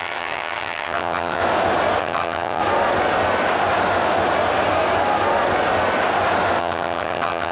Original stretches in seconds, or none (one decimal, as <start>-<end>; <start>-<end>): 1.4-2.0; 2.6-6.6